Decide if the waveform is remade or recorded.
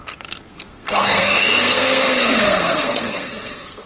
remade